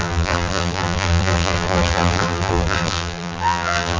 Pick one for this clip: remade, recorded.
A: remade